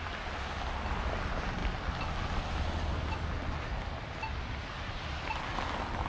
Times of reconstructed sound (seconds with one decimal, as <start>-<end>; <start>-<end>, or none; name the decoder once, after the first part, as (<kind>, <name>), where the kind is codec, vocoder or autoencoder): none